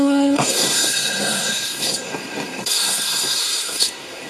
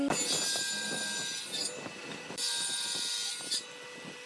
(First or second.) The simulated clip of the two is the first